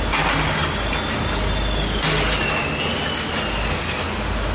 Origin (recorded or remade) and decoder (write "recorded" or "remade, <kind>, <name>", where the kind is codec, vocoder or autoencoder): recorded